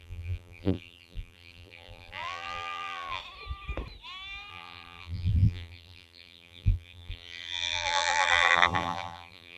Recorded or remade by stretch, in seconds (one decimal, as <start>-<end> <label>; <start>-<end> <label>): 0.0-3.2 remade; 3.2-4.5 recorded; 4.5-9.6 remade